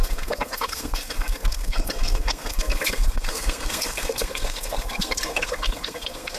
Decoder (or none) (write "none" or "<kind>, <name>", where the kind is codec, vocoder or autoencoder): codec, SNAC